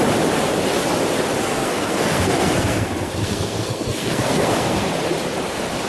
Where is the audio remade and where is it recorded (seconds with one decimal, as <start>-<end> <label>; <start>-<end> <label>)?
0.0-1.4 recorded; 1.4-4.9 remade; 4.9-5.9 recorded